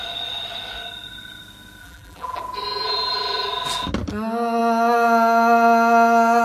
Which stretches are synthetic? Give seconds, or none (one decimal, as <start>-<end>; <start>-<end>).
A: 1.8-2.4